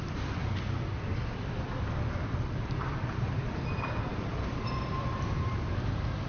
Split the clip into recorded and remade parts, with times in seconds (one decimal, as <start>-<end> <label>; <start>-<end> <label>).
0.0-0.4 remade; 0.4-1.1 recorded; 1.1-6.3 remade